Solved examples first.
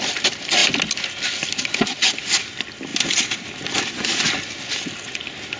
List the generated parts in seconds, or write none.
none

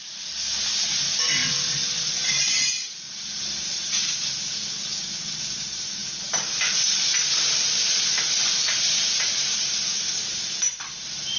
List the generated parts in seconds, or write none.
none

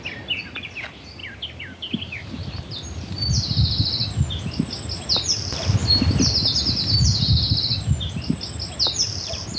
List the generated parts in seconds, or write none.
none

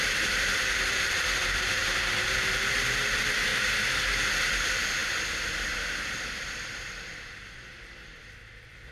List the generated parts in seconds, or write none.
0.0-3.5 (vocoder, BigVGAN v2); 4.5-8.9